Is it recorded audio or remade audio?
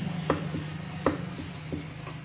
recorded